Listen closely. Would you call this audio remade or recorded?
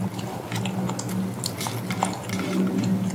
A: recorded